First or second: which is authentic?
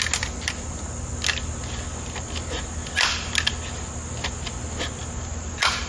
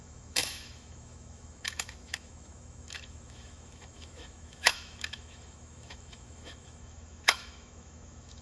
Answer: first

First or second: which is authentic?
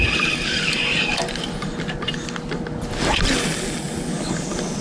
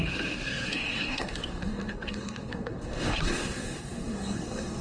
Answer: first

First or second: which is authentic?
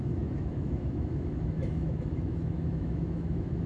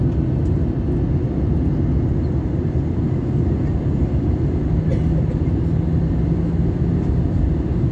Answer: second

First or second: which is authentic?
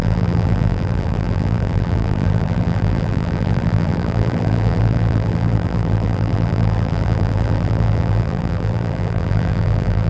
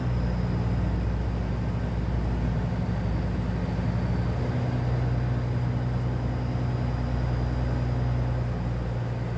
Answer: second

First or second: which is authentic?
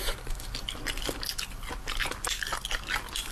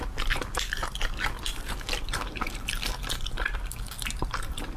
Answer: first